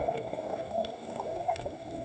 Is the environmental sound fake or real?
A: fake